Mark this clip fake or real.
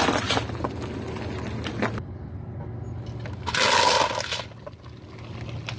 real